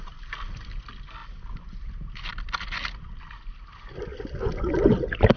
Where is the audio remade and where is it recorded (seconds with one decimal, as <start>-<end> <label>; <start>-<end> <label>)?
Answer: 0.0-5.4 recorded